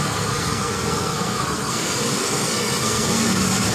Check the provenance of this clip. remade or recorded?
remade